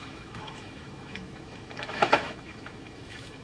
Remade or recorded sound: remade